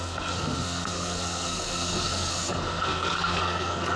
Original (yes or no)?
no